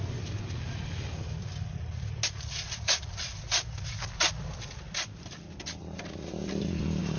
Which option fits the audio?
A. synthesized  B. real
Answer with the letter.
B